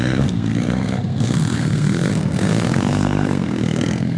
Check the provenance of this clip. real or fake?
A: fake